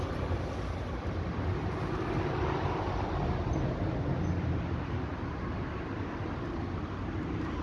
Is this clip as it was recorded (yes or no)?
yes